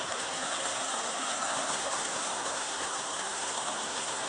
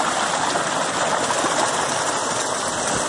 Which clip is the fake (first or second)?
first